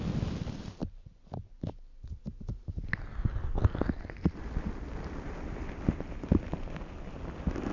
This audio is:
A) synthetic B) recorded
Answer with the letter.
B